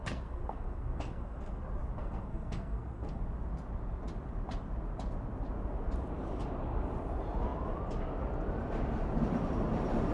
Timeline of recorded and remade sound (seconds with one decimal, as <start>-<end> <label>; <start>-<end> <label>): 0.0-1.6 remade; 1.6-2.0 recorded; 2.0-3.2 remade; 3.2-10.1 recorded